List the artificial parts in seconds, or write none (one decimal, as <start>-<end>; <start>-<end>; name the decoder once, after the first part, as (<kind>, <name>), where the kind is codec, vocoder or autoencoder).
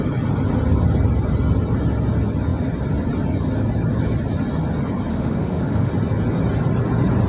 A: 5.1-5.9 (autoencoder, DAC-VAE)